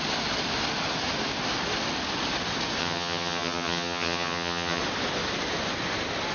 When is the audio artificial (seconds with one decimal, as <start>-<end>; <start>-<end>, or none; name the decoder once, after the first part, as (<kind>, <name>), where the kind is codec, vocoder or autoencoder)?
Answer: 2.8-4.8 (vocoder, HiFi-GAN)